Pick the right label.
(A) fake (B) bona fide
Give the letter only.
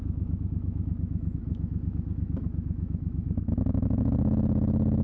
A